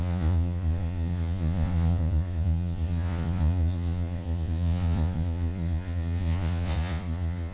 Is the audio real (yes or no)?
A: no